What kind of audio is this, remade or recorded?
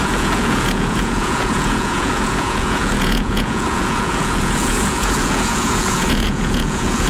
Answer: remade